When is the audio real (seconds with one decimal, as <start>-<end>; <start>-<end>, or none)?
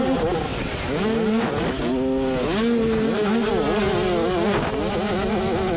0.0-5.8